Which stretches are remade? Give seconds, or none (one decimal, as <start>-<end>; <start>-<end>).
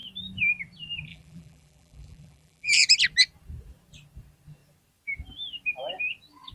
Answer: 1.1-2.9